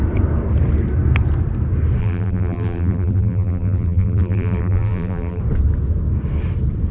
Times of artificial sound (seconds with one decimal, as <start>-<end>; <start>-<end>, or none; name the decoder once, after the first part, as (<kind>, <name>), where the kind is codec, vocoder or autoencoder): 2.0-5.4 (vocoder, BigVGAN v2)